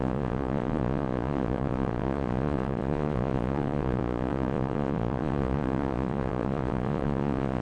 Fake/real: fake